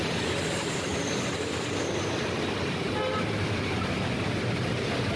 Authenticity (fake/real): real